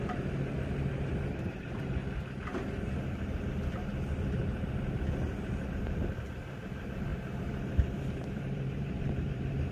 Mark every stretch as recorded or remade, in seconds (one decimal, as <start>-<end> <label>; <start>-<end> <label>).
0.0-2.0 remade; 2.0-5.7 recorded; 5.7-9.7 remade